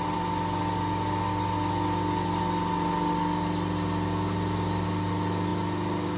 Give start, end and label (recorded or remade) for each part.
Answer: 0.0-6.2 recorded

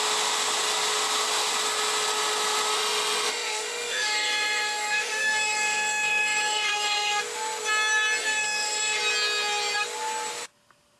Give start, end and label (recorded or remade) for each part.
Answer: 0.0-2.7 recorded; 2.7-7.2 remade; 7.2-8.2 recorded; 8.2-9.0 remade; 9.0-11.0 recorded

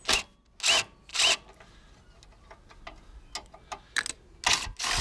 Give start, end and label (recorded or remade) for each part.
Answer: 0.0-5.0 recorded

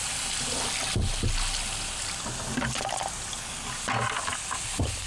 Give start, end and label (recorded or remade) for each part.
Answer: 0.0-5.1 recorded

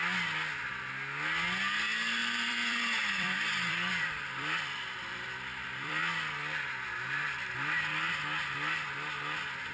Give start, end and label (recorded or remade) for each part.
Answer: 0.0-2.2 recorded; 2.2-6.0 remade; 6.0-9.7 recorded

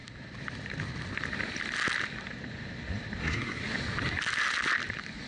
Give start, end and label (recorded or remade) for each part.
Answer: 0.0-3.2 recorded; 3.2-3.6 remade; 3.6-5.3 recorded

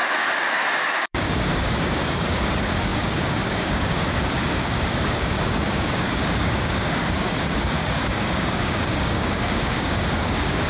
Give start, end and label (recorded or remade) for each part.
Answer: 0.0-10.7 remade